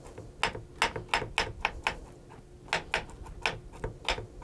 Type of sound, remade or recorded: recorded